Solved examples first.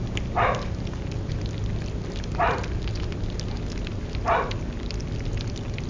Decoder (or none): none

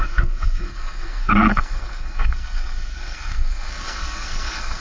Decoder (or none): codec, SNAC